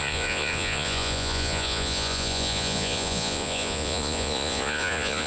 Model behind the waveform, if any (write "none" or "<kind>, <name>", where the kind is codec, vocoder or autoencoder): vocoder, Vocos